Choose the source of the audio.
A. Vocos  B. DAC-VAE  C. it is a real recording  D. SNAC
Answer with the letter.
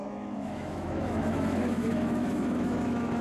B